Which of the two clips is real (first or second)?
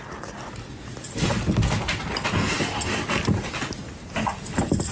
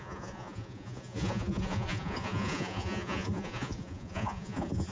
first